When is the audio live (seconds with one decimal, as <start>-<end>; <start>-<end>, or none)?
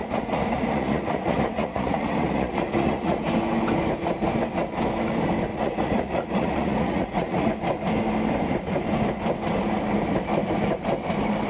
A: 3.3-5.5; 7.5-11.5